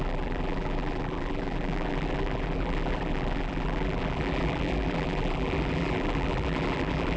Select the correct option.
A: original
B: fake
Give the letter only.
B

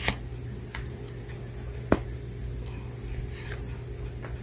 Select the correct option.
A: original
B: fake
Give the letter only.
A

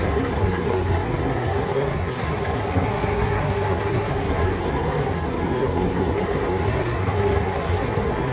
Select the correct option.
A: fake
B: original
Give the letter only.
A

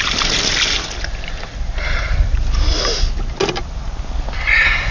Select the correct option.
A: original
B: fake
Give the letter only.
A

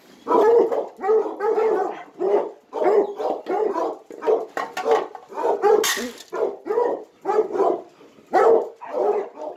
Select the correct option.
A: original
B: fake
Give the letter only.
A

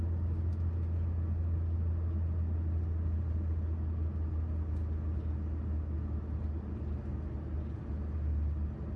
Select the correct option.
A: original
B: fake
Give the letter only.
A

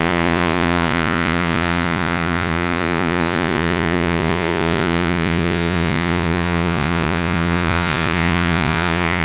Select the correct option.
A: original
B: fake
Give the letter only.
B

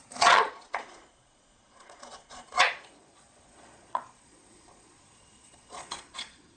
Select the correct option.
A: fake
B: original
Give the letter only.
A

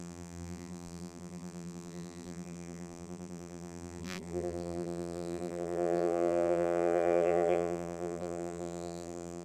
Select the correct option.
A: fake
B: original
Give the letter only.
A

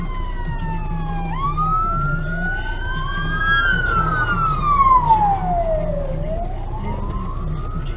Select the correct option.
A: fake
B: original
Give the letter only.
B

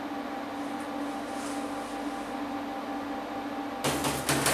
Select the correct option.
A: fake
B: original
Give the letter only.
B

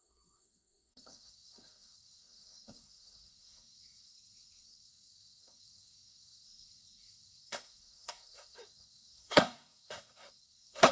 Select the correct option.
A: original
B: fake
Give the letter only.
B